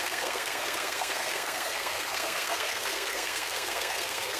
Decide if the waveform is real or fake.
fake